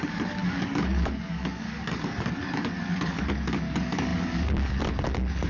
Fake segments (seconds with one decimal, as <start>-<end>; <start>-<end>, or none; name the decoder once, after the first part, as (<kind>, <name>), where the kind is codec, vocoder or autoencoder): 0.0-5.5 (codec, DAC)